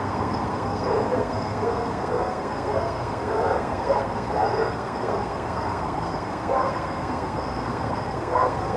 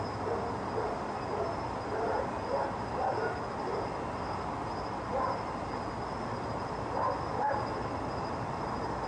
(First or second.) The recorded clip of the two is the second